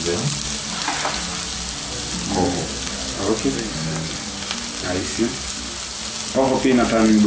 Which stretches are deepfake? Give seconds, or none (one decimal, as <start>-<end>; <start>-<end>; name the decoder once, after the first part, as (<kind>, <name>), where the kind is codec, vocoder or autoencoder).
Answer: none

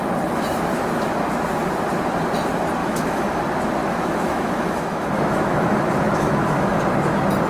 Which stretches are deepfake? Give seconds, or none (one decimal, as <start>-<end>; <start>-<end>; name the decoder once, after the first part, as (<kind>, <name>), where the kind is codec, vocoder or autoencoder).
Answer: 2.8-3.4 (autoencoder, DAC-VAE); 3.8-6.8

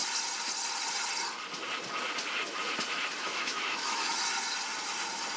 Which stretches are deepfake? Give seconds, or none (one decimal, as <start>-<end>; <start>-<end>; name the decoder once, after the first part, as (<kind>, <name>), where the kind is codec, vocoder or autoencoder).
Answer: 3.3-4.1 (autoencoder, DAC-VAE)

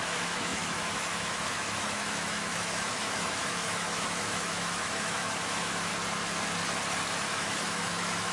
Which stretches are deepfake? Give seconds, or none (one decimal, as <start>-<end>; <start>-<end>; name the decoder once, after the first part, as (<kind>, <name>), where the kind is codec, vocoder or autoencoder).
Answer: 0.0-5.9 (autoencoder, DAC-VAE); 7.3-8.3